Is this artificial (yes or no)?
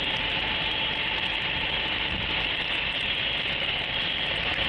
yes